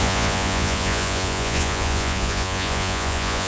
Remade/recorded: remade